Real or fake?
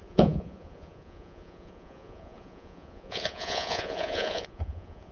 fake